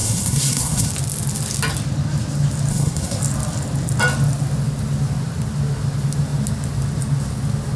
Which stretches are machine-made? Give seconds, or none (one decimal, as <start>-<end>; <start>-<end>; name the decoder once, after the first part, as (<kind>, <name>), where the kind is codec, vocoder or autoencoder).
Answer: 0.0-0.9 (codec, SNAC); 2.7-3.2